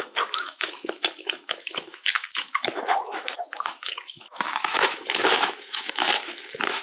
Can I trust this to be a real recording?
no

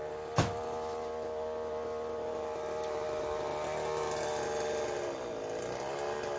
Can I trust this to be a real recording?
yes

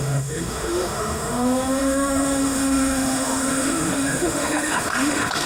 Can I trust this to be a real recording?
no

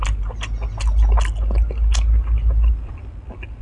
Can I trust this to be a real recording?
yes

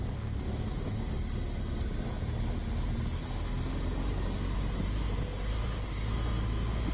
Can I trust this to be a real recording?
yes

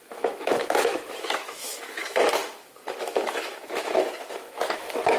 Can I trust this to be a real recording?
no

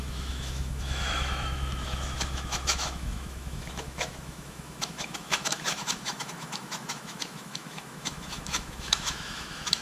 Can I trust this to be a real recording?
no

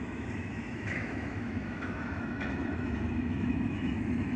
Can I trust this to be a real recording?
no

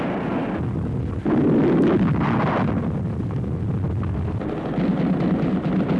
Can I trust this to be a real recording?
yes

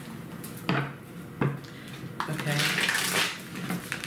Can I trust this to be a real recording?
yes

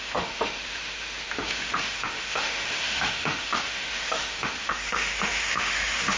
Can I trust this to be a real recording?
no